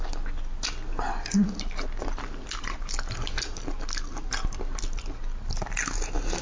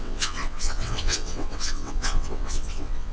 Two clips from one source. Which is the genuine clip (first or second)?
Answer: first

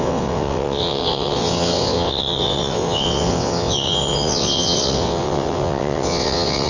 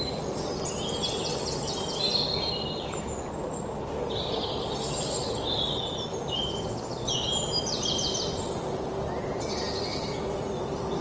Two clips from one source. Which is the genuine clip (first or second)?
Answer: second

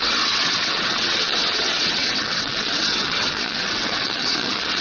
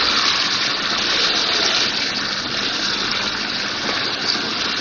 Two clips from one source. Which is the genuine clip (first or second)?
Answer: second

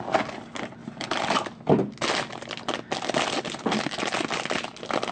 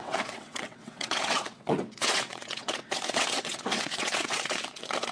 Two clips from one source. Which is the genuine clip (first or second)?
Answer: first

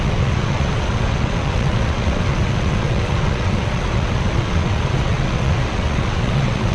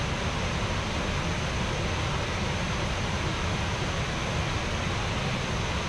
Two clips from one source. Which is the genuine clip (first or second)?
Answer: second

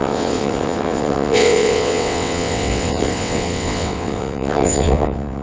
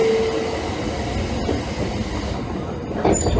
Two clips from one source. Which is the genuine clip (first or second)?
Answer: second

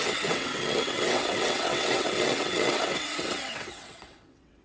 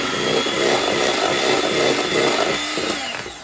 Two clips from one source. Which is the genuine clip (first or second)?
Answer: second